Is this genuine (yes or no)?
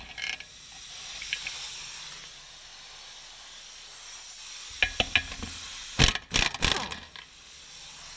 yes